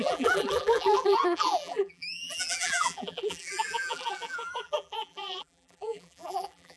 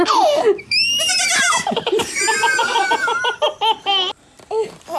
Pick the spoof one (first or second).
first